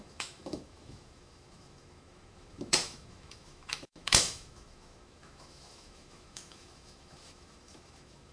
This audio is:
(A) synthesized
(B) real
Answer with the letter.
A